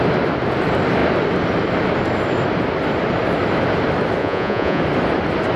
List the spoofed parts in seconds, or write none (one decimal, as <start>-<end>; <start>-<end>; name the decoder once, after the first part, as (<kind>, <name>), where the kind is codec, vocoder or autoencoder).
4.2-4.8 (vocoder, Vocos)